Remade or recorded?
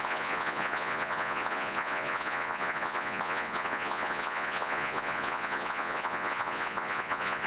remade